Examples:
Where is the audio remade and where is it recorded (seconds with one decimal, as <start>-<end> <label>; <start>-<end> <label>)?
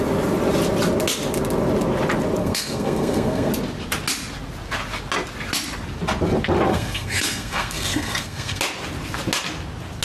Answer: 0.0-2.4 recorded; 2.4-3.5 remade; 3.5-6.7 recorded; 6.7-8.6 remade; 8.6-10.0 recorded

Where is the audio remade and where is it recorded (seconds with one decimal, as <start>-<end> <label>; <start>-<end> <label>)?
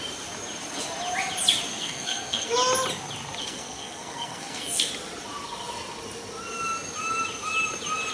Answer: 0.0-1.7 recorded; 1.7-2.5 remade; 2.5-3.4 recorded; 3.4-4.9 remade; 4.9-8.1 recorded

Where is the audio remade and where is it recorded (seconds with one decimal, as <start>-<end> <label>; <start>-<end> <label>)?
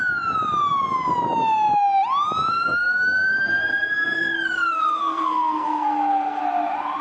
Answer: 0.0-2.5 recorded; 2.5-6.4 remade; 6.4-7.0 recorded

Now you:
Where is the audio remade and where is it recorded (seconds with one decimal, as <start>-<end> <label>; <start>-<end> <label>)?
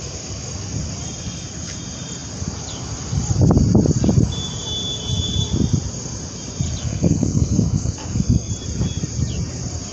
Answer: 0.0-6.8 recorded; 6.8-8.5 remade; 8.5-9.9 recorded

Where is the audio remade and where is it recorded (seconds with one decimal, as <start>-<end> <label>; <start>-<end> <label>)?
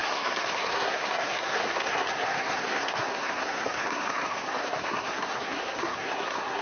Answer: 0.0-6.6 remade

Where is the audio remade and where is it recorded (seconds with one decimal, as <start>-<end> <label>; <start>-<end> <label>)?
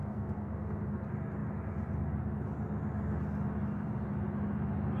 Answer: 0.0-0.8 remade; 0.8-5.0 recorded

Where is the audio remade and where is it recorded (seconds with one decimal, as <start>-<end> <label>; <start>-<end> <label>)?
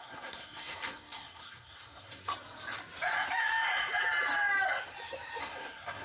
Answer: 0.0-2.3 remade; 2.3-5.4 recorded; 5.4-6.0 remade